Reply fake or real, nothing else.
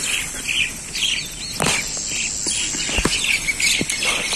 real